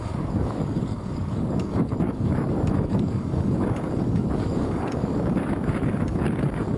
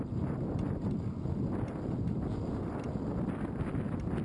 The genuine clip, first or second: second